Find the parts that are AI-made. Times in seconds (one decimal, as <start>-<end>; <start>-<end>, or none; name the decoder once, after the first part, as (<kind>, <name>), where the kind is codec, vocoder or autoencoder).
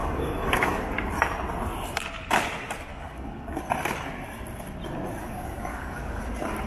0.0-0.8 (codec, DAC); 2.9-3.6; 5.2-6.2